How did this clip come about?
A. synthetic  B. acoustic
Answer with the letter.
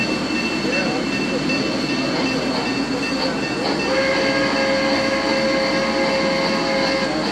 B